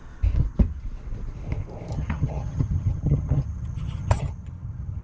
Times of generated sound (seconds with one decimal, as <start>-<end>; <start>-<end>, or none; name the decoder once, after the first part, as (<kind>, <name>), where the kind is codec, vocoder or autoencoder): 1.9-5.0 (vocoder, HiFi-GAN)